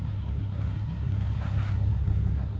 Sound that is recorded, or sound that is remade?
remade